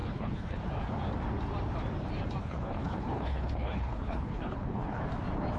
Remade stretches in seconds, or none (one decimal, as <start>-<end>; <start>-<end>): 0.0-0.6; 2.4-5.0